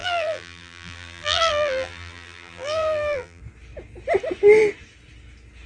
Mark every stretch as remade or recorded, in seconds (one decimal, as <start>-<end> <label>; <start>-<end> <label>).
0.0-3.4 remade; 3.4-5.7 recorded